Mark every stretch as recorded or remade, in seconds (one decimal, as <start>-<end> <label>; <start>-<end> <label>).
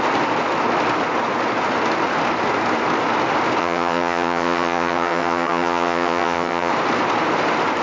0.0-3.6 recorded; 3.6-6.7 remade; 6.7-7.8 recorded